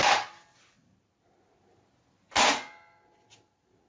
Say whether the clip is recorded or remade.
recorded